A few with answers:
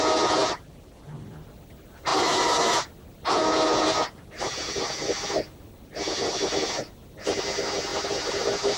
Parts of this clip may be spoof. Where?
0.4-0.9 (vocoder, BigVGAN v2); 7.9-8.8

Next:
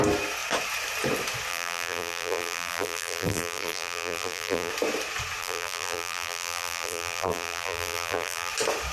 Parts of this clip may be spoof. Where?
1.5-4.7 (vocoder, BigVGAN v2); 5.4-8.5

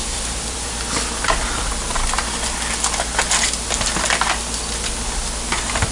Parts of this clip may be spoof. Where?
0.0-0.7 (vocoder, BigVGAN v2)